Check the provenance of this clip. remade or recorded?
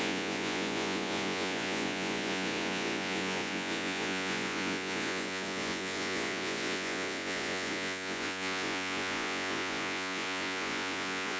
remade